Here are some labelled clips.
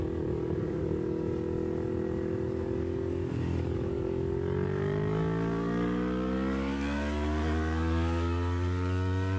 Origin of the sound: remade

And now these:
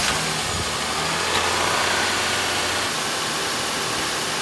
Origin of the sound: recorded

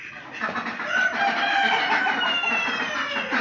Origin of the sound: recorded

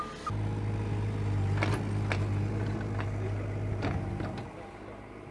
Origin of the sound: recorded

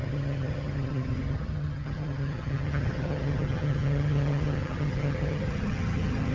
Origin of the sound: remade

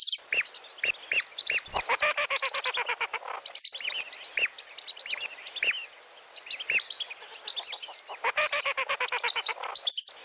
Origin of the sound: recorded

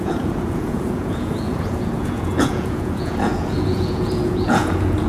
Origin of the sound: remade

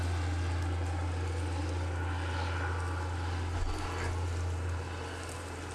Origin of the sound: recorded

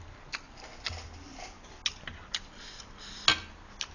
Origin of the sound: recorded